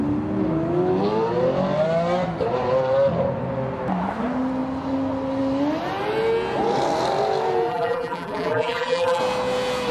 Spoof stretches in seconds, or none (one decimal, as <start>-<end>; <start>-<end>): 7.7-9.2